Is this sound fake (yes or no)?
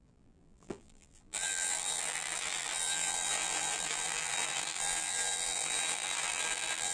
yes